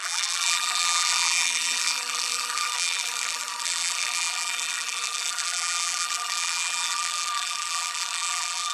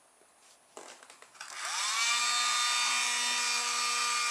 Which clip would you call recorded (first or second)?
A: second